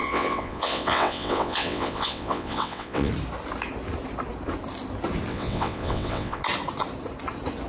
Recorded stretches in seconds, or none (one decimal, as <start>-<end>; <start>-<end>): 3.1-5.3; 6.4-7.7

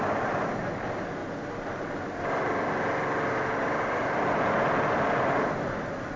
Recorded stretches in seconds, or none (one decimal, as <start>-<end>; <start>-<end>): 0.0-6.2

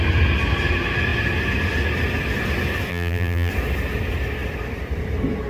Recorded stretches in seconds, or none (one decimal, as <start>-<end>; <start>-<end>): 0.0-2.9; 3.5-5.5

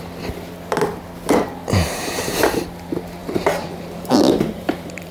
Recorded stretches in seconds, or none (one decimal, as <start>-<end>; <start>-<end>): 0.0-1.6; 2.4-3.2